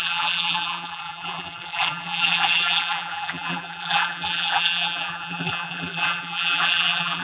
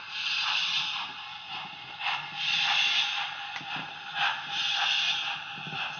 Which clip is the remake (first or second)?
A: first